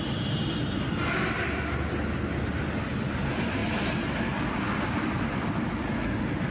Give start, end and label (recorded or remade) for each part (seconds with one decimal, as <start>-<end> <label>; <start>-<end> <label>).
0.0-6.5 recorded